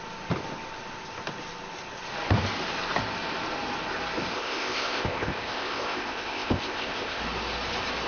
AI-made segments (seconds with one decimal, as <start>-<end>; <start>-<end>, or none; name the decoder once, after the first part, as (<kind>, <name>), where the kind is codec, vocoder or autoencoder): 4.3-7.2 (codec, ZipCodec)